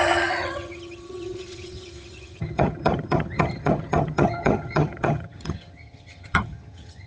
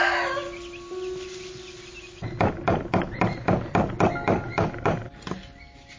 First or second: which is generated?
first